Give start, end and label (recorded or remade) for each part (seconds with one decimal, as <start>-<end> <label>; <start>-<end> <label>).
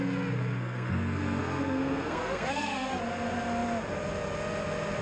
0.0-0.4 recorded; 0.4-3.0 remade; 3.0-5.0 recorded